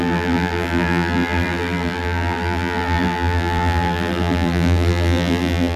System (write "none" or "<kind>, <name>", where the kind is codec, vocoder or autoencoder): vocoder, BigVGAN v2